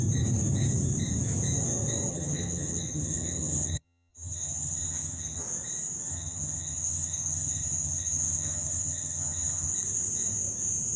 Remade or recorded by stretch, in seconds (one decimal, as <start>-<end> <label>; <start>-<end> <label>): 0.0-2.1 recorded; 2.1-5.4 remade; 5.4-6.1 recorded; 6.1-9.7 remade; 9.7-11.0 recorded